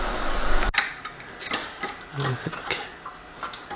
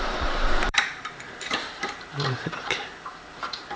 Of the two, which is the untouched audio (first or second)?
first